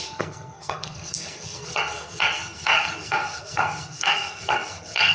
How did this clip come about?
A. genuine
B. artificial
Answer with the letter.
B